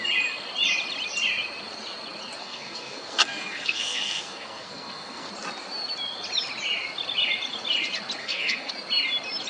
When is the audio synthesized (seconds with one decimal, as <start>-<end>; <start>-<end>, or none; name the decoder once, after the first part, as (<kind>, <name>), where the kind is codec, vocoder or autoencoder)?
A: 2.4-5.3 (codec, SNAC); 8.2-8.7